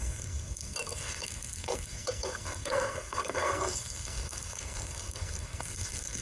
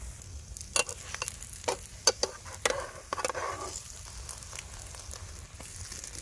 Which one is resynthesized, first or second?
first